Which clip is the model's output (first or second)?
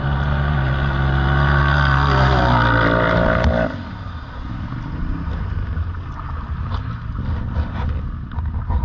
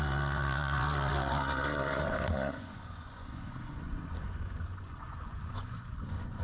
second